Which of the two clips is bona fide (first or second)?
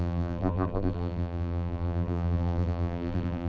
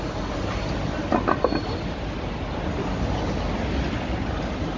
second